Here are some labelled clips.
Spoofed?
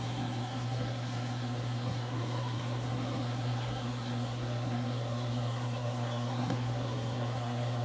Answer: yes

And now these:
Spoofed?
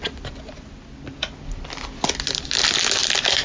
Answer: no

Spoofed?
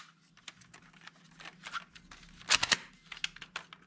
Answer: no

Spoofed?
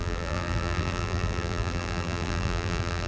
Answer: yes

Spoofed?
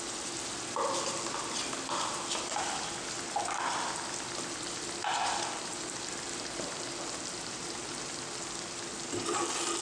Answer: no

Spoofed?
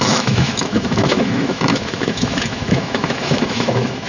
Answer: yes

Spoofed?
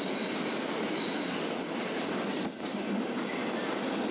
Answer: no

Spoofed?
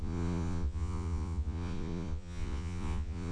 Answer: yes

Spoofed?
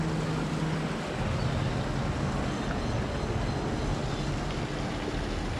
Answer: no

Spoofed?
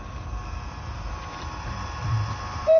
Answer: yes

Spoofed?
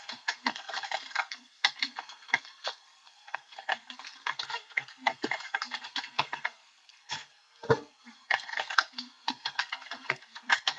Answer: yes